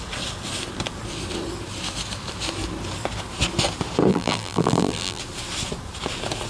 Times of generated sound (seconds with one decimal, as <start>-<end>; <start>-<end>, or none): 4.1-5.2